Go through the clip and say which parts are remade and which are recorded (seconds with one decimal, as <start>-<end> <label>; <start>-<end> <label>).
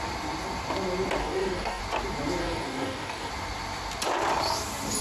0.0-1.2 recorded; 1.2-1.8 remade; 1.8-2.4 recorded; 2.4-3.3 remade; 3.3-5.0 recorded